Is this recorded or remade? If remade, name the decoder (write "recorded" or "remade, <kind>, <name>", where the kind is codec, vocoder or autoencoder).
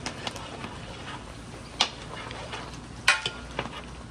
recorded